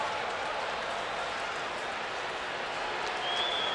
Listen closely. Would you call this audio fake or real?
real